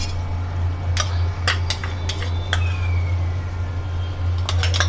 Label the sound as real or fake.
real